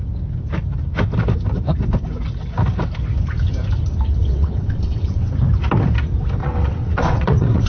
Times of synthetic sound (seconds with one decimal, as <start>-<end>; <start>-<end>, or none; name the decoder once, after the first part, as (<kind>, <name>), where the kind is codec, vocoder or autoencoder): 4.2-5.3 (vocoder, WaveNeXt); 6.4-7.7